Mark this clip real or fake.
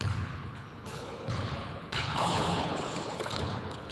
fake